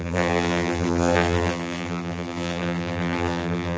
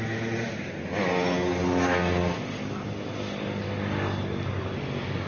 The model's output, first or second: first